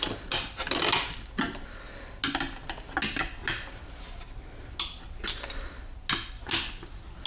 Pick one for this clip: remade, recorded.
recorded